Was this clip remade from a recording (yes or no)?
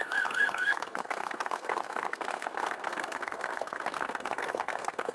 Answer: yes